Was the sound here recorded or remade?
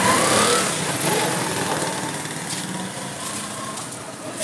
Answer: recorded